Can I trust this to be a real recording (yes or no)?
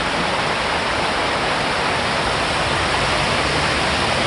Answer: yes